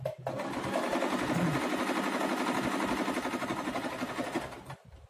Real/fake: real